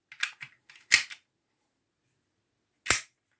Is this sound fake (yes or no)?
no